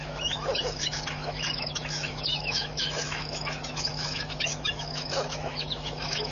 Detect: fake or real fake